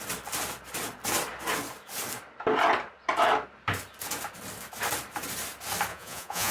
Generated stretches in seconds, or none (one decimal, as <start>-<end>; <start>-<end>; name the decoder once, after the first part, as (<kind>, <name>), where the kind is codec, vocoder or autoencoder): 5.9-6.5 (vocoder, Vocos)